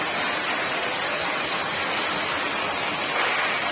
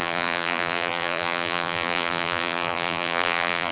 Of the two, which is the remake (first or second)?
second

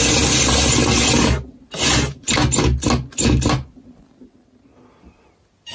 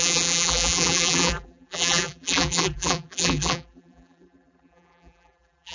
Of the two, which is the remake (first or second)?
second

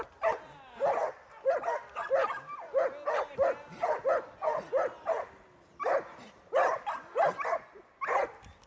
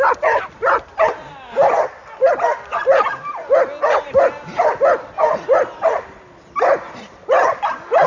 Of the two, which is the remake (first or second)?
second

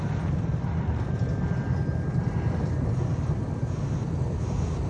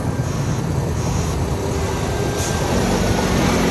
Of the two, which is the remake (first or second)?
first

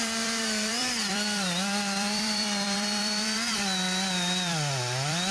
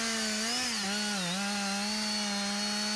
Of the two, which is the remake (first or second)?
first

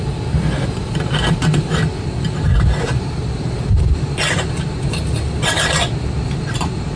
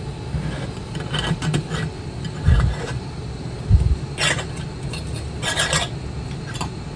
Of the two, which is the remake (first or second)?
first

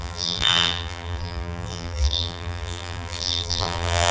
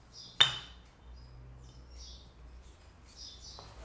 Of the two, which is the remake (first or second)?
first